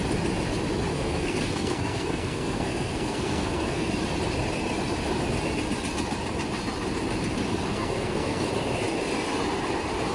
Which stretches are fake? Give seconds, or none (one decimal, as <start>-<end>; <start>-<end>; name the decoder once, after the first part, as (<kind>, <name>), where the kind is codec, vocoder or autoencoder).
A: 0.9-3.9 (codec, SNAC); 7.7-8.5

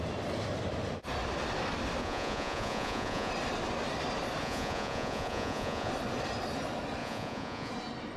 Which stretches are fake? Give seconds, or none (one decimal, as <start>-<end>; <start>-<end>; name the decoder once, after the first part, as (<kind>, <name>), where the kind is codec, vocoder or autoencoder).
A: 2.0-3.3 (vocoder, Vocos); 4.4-5.9; 7.0-7.7

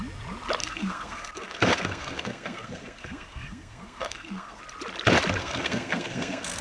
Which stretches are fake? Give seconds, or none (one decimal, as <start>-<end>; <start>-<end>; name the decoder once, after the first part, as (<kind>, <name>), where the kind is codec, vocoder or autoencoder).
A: 0.6-4.6 (codec, SNAC); 5.4-6.6

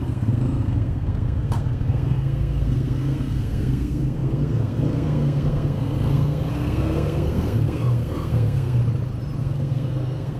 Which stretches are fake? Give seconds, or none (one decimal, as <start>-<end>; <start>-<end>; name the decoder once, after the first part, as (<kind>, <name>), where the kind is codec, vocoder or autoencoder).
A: 0.0-8.8 (codec, SNAC); 9.4-10.4

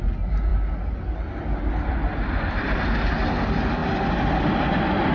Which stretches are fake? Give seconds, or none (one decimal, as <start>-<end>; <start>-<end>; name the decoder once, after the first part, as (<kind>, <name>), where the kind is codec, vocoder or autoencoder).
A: none

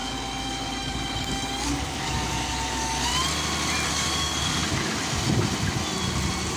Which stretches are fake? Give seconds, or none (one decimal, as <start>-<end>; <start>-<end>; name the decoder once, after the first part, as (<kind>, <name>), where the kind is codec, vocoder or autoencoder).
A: 0.0-3.1 (codec, DAC); 3.9-4.6

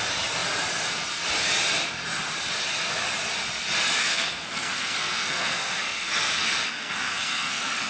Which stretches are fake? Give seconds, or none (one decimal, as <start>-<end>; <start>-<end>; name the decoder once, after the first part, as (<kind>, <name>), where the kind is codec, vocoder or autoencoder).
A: 4.0-7.9 (codec, SNAC)

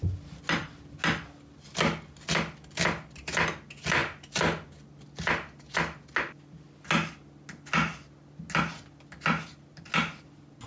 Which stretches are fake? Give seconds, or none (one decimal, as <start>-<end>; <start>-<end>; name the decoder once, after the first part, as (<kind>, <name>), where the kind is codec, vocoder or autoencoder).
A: none